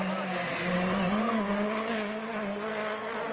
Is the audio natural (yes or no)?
yes